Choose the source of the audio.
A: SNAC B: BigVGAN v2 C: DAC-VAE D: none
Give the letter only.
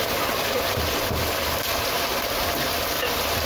D